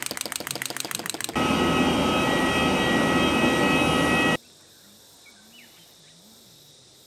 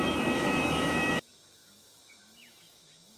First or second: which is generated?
second